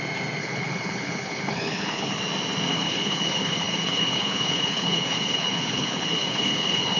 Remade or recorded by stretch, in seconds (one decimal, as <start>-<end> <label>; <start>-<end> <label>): 0.0-0.4 recorded; 0.4-2.2 remade; 2.2-2.7 recorded; 2.7-7.0 remade